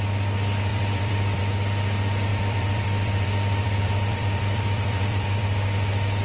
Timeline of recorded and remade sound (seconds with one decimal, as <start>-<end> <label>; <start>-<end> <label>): 0.0-0.7 recorded; 0.7-1.4 remade; 1.4-2.3 recorded; 2.3-5.4 remade; 5.4-6.2 recorded